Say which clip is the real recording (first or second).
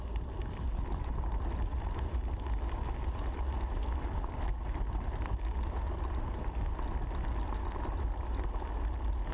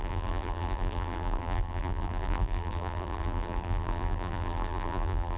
first